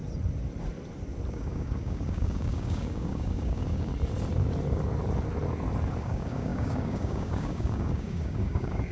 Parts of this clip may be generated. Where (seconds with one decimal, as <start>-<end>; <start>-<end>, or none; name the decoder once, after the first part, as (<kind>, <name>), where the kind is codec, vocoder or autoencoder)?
1.3-3.9 (codec, DAC); 6.0-8.9